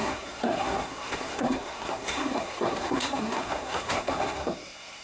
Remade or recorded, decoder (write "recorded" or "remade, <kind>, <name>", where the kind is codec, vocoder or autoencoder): remade, codec, SNAC